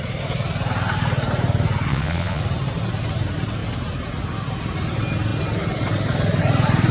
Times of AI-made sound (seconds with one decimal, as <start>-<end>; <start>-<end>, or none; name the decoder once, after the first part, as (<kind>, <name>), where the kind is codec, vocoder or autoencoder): 1.9-2.4 (vocoder, Vocos)